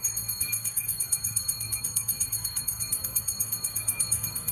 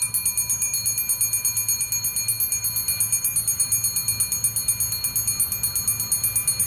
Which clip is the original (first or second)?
second